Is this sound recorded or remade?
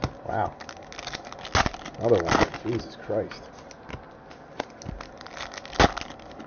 recorded